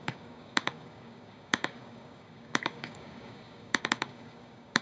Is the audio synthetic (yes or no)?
yes